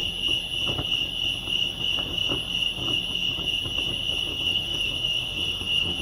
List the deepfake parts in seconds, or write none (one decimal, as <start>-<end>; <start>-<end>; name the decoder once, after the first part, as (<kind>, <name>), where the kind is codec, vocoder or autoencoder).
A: 4.3-6.0 (autoencoder, DAC-VAE)